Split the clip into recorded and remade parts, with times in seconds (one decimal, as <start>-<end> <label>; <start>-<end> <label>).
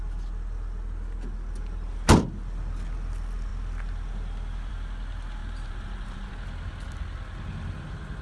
0.0-5.4 recorded; 5.4-6.3 remade; 6.3-8.2 recorded